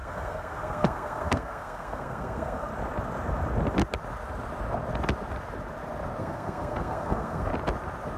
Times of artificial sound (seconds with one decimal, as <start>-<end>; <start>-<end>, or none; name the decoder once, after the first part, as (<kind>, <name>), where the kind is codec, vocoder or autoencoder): 0.0-2.7 (codec, SNAC); 6.2-7.5